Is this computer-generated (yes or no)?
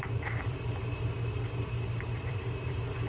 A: yes